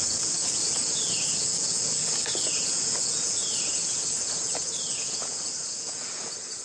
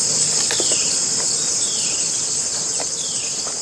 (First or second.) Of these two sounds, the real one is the second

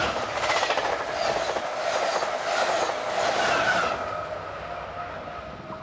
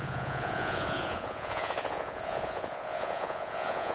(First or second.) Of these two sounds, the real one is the first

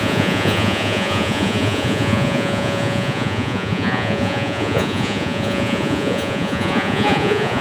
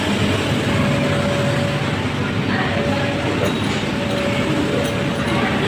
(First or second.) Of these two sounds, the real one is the second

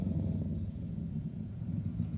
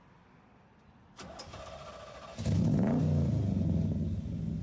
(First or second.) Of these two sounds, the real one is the second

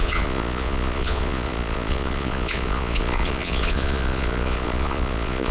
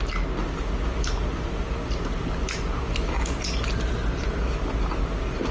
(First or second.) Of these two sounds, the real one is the second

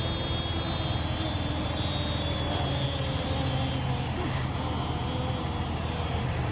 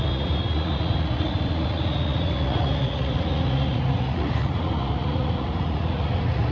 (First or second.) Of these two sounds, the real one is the first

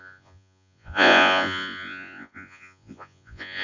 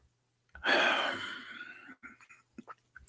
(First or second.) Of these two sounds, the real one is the second